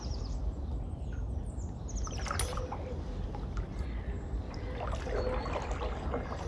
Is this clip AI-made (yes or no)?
no